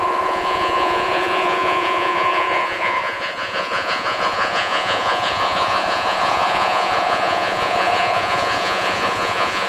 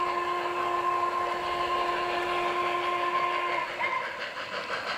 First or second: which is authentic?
second